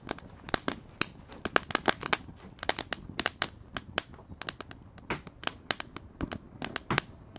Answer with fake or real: real